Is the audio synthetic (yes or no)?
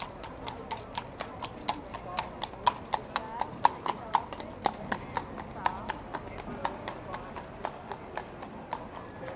no